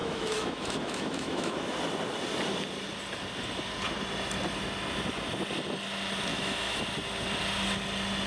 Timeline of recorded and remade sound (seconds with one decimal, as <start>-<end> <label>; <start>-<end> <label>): 0.0-1.7 remade; 1.7-6.3 recorded; 6.3-6.8 remade; 6.8-8.3 recorded